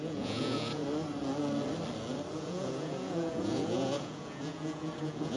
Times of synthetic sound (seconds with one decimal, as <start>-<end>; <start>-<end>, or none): 0.0-0.8; 2.3-5.4